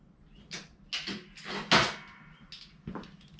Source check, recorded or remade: recorded